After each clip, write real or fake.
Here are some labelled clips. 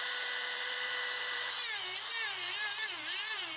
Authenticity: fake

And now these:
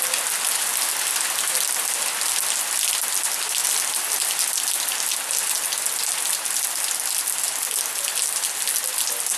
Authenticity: real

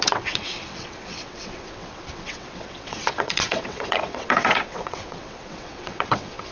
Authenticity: fake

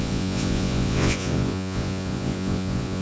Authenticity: fake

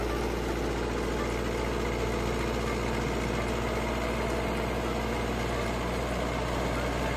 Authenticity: real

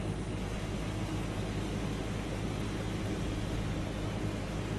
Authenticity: real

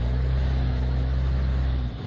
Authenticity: fake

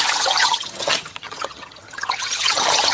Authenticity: fake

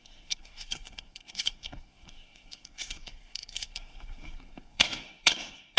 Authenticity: fake